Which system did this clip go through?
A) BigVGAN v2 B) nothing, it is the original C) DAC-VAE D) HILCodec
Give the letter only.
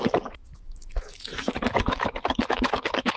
C